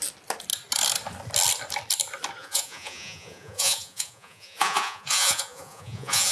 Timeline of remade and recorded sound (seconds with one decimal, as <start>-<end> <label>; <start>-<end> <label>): 0.0-2.4 recorded; 2.4-6.3 remade